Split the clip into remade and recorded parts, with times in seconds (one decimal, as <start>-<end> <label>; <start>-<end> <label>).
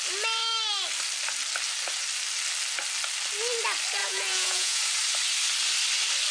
0.0-4.0 recorded; 4.0-4.8 remade; 4.8-6.3 recorded